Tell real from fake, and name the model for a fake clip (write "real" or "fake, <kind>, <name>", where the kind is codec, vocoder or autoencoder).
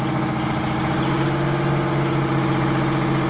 real